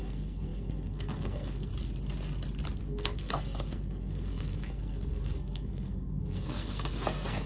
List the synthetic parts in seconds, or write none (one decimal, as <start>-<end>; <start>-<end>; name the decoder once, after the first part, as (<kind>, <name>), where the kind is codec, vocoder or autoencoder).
0.0-1.7 (codec, SNAC); 2.8-7.5